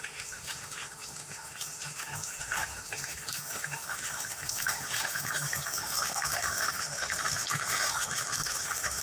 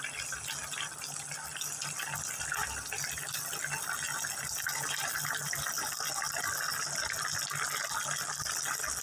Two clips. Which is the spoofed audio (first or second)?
first